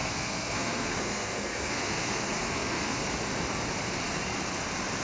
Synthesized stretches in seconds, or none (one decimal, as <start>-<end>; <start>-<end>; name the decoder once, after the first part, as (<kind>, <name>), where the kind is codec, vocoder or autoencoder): 0.0-3.0 (codec, SNAC)